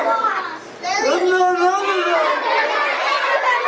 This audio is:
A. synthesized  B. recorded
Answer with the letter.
B